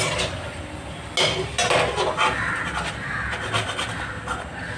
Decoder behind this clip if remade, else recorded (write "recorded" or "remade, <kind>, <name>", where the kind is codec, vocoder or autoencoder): recorded